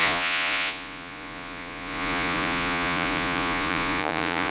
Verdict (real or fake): fake